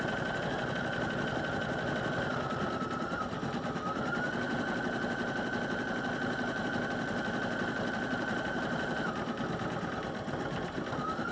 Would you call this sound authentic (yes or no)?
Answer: yes